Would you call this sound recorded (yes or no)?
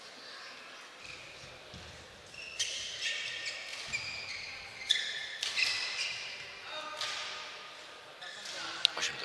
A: yes